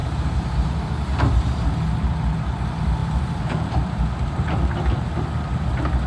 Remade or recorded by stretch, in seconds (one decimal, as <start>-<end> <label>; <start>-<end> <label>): 0.0-0.7 remade; 0.7-1.1 recorded; 1.1-1.7 remade; 1.7-3.0 recorded; 3.0-4.9 remade; 4.9-6.1 recorded